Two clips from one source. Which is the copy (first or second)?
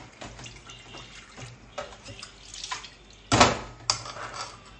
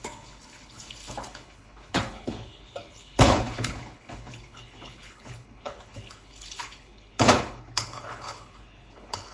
second